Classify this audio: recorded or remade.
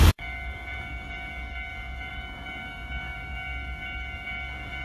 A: remade